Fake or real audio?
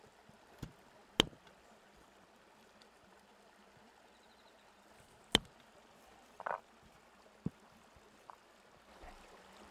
real